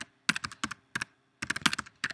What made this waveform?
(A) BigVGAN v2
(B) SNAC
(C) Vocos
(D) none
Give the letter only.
D